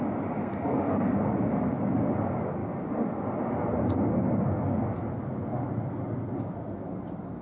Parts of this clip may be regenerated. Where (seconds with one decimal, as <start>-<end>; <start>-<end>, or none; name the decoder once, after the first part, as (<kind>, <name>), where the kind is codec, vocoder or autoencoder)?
0.4-1.1 (codec, SNAC)

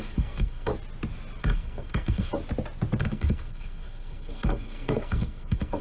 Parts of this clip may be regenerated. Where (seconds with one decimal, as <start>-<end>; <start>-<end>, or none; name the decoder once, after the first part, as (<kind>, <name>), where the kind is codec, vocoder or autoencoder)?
0.0-0.7 (codec, SNAC); 1.4-2.3; 3.0-5.8

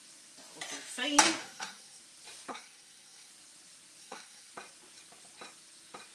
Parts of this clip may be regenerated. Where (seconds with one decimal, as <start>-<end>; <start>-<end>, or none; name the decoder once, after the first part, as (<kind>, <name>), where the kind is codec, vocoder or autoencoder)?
1.4-2.0 (codec, SNAC); 2.5-3.3; 4.0-4.5

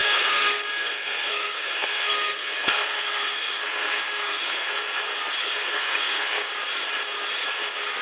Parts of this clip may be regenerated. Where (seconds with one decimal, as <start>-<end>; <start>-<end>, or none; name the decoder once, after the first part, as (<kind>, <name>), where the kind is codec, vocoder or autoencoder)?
0.0-4.8 (codec, SNAC); 5.4-6.5

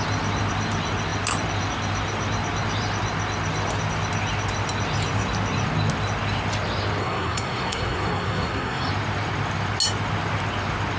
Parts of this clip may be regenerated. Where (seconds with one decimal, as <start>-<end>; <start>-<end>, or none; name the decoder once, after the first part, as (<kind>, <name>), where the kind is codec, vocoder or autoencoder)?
7.0-8.9 (codec, SNAC)

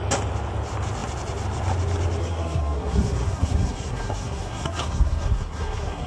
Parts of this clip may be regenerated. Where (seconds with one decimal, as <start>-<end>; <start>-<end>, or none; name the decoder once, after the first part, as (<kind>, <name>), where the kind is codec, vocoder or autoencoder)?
2.2-6.1 (codec, SNAC)

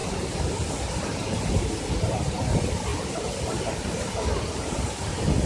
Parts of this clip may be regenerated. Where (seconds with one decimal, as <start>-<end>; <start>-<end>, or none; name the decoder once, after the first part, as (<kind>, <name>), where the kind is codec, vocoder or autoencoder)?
none

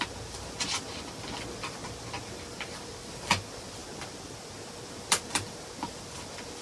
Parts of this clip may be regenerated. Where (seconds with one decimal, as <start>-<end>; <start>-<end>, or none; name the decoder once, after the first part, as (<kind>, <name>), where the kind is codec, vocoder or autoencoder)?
none